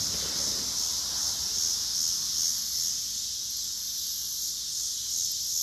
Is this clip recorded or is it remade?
recorded